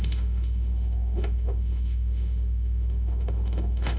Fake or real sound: fake